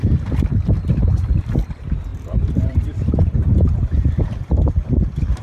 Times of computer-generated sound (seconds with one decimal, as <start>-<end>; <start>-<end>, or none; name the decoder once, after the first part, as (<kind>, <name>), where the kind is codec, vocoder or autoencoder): 2.1-4.5 (vocoder, BigVGAN v2)

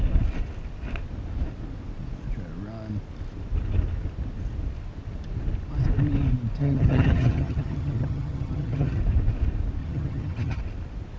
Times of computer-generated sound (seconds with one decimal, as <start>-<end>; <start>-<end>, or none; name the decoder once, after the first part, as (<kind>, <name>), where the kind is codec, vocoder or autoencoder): 6.6-9.0 (vocoder, HiFi-GAN); 9.8-10.6

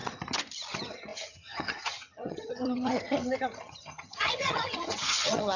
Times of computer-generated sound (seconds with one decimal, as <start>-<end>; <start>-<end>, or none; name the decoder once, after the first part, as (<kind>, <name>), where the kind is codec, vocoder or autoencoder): 0.7-5.6 (vocoder, HiFi-GAN)

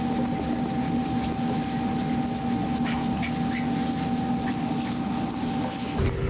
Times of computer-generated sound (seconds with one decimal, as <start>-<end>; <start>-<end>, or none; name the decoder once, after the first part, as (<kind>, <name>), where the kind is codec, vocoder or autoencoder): none